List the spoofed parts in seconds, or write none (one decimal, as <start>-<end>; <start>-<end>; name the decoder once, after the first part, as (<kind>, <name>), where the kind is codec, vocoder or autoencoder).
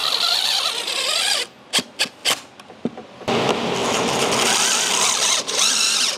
0.0-1.0 (vocoder, BigVGAN v2); 2.2-3.3; 3.8-5.3